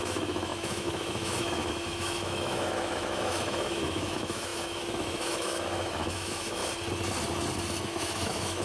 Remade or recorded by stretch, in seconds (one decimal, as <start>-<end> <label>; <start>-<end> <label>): 0.0-6.6 remade; 6.6-7.8 recorded; 7.8-8.6 remade